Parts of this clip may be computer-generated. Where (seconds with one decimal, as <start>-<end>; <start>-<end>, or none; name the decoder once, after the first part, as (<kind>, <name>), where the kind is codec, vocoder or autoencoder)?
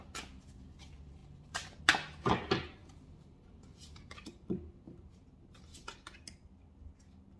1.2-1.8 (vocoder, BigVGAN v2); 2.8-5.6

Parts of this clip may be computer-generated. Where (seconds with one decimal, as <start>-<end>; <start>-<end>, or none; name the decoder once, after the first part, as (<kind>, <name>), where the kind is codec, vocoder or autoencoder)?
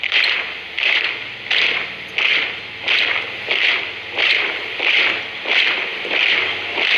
2.3-3.3 (vocoder, BigVGAN v2); 5.9-7.0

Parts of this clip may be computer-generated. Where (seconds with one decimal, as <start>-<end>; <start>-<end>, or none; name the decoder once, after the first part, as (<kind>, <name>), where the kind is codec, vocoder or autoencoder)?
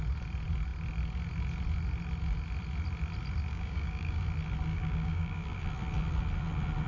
3.5-4.2 (codec, DAC); 4.7-5.6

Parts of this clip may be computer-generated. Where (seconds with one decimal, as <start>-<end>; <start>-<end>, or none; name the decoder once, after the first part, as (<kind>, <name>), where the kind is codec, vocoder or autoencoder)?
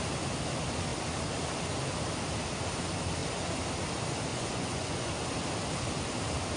4.3-5.1 (vocoder, Vocos)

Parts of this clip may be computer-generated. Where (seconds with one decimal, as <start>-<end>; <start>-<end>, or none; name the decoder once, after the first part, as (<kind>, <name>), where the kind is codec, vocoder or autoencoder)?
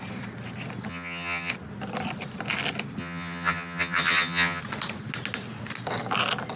0.9-1.5 (vocoder, HiFi-GAN); 3.0-4.6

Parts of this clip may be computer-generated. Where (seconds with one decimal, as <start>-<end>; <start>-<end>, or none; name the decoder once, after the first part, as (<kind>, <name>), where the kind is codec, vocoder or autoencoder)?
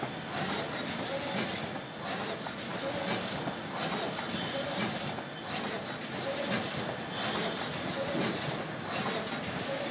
none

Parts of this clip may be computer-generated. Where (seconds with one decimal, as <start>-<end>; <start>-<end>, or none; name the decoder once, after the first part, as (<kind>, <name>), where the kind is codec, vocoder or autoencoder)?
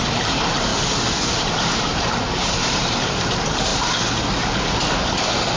0.0-0.7 (vocoder, BigVGAN v2); 1.3-3.7